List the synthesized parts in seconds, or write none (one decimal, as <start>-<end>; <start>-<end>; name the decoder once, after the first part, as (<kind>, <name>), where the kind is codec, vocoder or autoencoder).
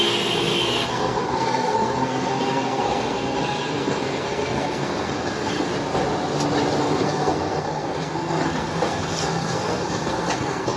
0.0-5.7 (codec, SNAC); 6.8-10.8